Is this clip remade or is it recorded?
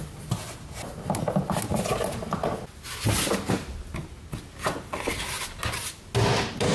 recorded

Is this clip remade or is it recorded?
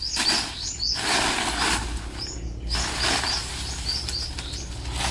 recorded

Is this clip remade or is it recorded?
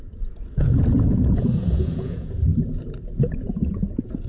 remade